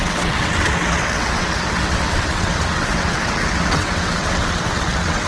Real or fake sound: fake